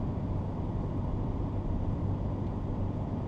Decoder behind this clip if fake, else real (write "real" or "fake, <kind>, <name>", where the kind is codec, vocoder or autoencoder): real